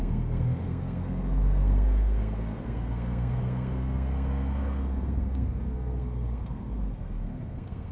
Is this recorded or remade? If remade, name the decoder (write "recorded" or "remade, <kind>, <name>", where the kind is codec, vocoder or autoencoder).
remade, codec, SNAC